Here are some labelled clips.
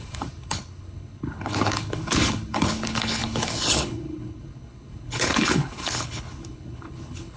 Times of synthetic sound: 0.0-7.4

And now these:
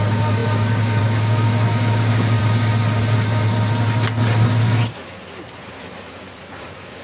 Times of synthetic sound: 0.0-2.4; 6.5-7.0

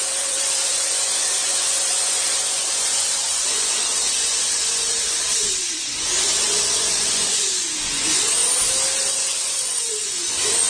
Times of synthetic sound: 0.0-8.4; 9.1-10.7